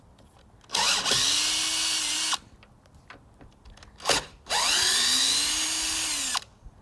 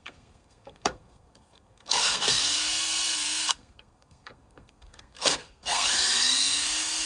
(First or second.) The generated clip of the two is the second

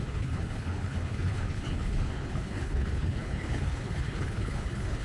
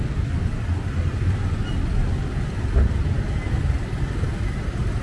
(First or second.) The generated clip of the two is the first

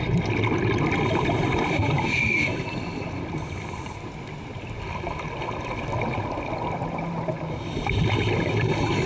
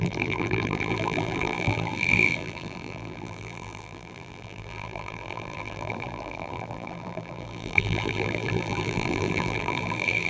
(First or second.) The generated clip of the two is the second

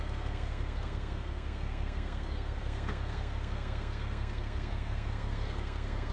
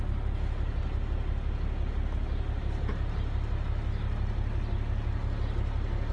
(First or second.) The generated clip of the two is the first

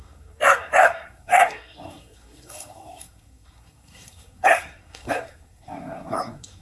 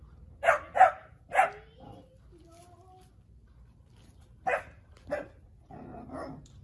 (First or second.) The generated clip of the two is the first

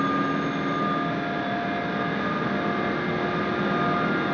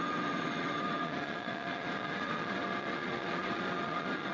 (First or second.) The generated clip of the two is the second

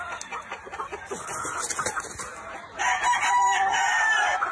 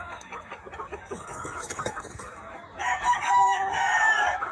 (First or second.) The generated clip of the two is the second